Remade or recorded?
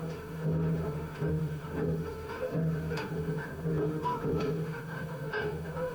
remade